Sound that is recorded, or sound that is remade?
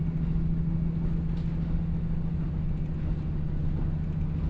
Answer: recorded